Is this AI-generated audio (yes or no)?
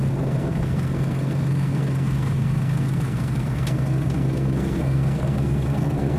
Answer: yes